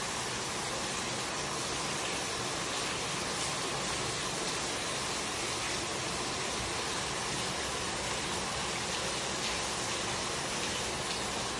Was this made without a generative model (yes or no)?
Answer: yes